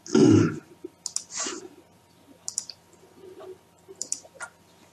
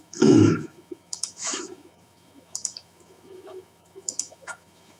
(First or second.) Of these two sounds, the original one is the first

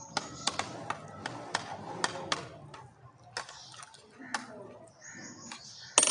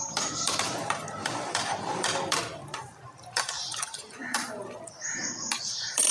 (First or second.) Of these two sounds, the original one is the first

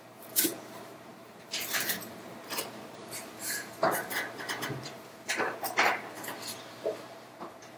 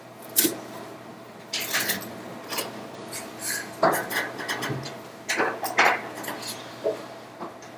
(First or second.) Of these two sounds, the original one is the second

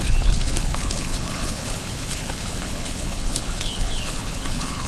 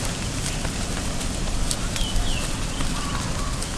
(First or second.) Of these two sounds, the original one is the second